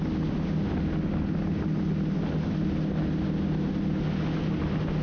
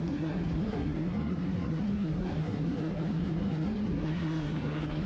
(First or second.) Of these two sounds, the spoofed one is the second